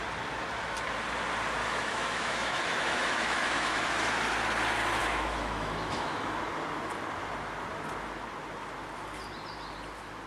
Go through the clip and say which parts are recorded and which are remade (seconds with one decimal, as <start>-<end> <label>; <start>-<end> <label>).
0.0-1.6 recorded; 1.6-3.9 remade; 3.9-5.0 recorded; 5.0-6.4 remade; 6.4-10.3 recorded